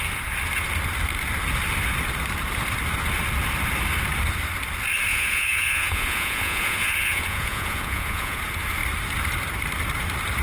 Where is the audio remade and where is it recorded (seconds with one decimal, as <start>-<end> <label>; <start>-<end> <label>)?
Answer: 0.0-5.1 recorded; 5.1-8.4 remade; 8.4-10.4 recorded